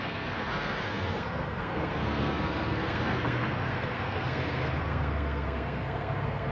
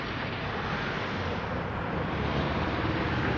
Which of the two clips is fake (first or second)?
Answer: first